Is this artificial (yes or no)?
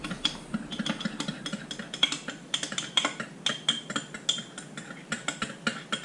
no